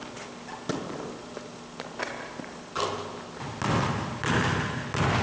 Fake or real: real